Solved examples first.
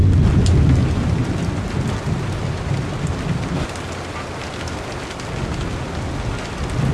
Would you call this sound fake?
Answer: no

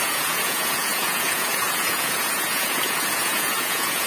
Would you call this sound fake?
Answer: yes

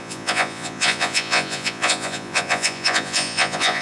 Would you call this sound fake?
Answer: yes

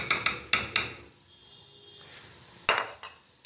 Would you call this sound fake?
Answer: no